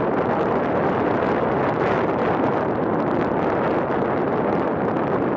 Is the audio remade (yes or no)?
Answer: no